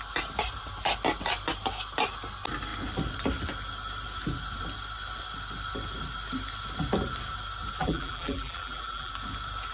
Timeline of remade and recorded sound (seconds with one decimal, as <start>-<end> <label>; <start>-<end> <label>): 0.0-7.8 recorded; 7.8-9.1 remade; 9.1-9.7 recorded